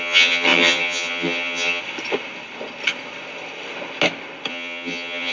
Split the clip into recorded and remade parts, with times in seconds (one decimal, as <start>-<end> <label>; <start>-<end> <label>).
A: 0.0-1.8 remade; 1.8-4.5 recorded; 4.5-5.3 remade